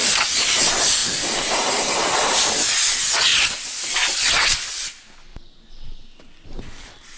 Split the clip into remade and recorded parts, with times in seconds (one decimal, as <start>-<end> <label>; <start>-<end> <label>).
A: 0.0-0.6 remade; 0.6-1.0 recorded; 1.0-2.5 remade; 2.5-3.3 recorded; 3.3-3.9 remade; 3.9-7.2 recorded